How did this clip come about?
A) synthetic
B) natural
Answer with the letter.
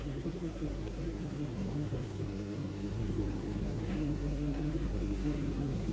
A